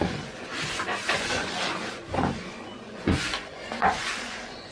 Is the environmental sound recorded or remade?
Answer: remade